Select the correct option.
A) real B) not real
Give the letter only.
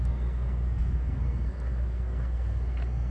B